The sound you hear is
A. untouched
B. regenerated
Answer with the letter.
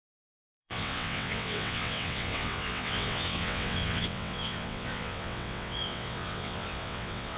B